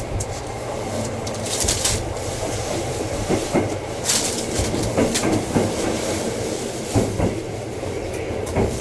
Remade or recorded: remade